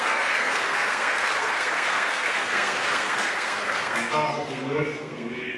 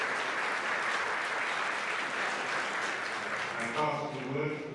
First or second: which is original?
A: second